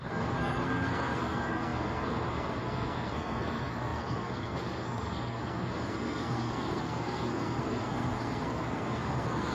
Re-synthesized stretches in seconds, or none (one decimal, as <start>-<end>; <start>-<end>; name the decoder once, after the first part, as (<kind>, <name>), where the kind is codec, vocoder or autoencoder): 0.0-9.5 (codec, SNAC)